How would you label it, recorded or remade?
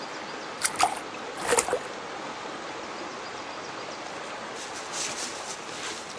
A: recorded